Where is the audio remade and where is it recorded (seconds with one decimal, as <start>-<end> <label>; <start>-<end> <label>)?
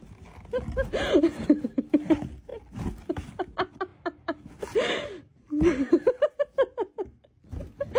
0.0-8.0 recorded